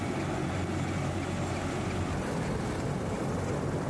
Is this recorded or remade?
recorded